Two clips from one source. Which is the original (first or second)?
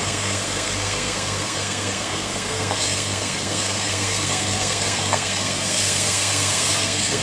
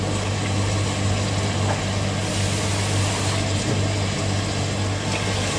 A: second